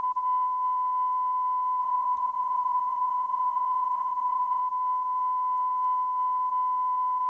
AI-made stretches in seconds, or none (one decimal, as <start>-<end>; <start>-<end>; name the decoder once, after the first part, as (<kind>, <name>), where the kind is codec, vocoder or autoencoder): 1.8-4.6 (vocoder, Vocos)